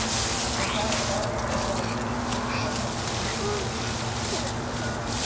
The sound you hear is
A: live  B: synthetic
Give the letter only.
A